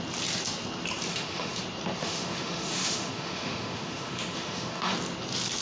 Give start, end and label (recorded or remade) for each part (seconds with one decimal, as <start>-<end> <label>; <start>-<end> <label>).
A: 0.0-1.1 recorded; 1.1-1.6 remade; 1.6-2.0 recorded; 2.0-4.9 remade; 4.9-5.6 recorded